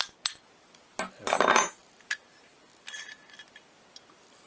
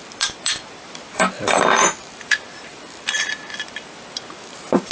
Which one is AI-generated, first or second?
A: second